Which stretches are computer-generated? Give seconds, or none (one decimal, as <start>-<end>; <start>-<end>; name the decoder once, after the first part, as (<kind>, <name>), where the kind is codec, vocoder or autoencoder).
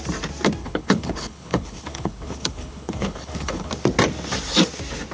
0.6-3.7 (codec, HILCodec)